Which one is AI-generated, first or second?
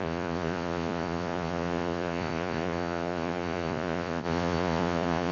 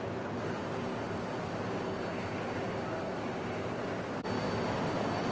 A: first